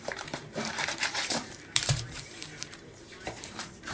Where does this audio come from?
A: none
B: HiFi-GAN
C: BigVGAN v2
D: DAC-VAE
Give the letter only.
C